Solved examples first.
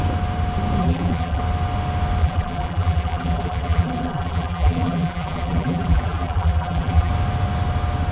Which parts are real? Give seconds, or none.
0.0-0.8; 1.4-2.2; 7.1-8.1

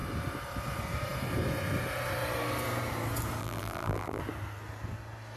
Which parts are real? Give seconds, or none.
0.0-3.4; 4.2-5.4

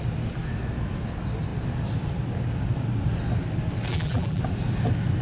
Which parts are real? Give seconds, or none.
0.0-3.9; 4.4-5.2

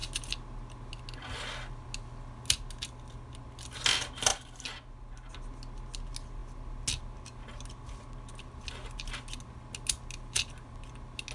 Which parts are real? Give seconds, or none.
0.0-11.3

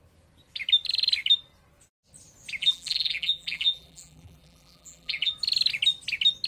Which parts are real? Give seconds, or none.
0.0-2.6; 5.3-6.5